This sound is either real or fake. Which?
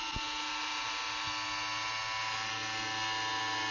real